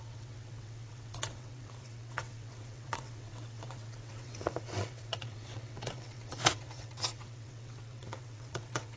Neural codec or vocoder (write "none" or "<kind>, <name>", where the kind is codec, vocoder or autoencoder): vocoder, WaveNeXt